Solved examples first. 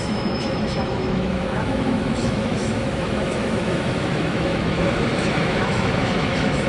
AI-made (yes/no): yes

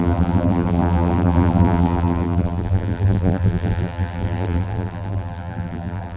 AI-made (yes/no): yes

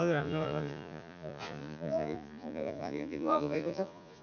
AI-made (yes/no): yes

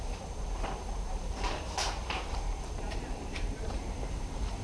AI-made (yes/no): yes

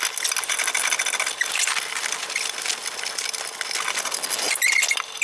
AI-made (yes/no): no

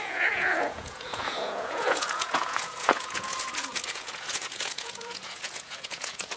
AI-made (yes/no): yes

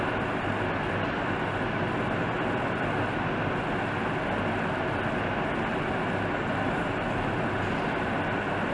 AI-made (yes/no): no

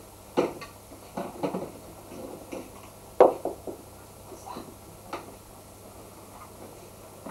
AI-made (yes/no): no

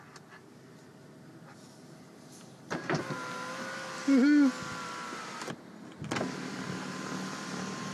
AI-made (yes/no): no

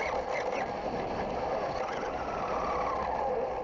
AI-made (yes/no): no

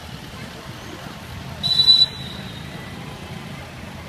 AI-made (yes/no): yes